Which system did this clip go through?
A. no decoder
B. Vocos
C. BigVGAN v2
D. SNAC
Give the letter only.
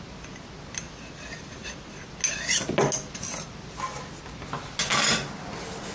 A